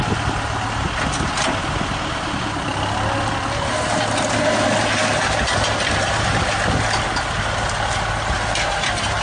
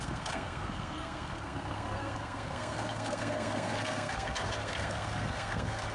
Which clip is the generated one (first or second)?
second